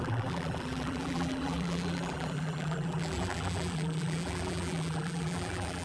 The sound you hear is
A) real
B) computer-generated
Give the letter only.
B